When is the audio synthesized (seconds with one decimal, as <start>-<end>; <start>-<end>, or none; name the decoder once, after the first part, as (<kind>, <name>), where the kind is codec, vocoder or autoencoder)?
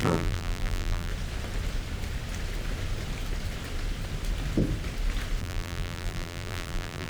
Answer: 0.0-1.1 (vocoder, BigVGAN v2); 5.4-7.1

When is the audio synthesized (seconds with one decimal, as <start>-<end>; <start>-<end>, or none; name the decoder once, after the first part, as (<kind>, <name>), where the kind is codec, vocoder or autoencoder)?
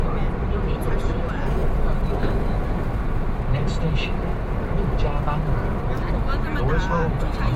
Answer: none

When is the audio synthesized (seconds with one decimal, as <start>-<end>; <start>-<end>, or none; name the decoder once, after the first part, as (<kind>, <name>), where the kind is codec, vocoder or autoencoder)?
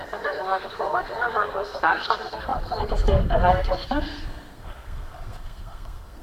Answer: 0.0-6.2 (codec, SNAC)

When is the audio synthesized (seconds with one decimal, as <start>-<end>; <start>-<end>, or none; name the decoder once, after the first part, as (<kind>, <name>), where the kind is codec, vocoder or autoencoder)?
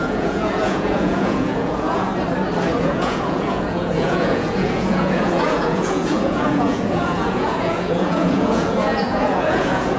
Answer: 0.0-2.1 (vocoder, Vocos); 2.8-10.0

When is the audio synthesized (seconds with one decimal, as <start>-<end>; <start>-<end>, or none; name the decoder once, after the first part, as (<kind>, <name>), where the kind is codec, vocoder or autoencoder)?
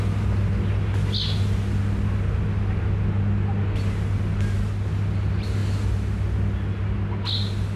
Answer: none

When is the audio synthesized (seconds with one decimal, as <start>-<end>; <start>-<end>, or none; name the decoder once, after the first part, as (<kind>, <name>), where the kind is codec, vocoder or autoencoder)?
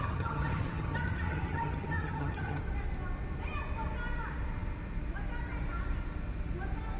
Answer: 0.0-2.6 (vocoder, HiFi-GAN)